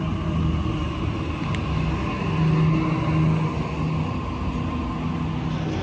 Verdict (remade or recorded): recorded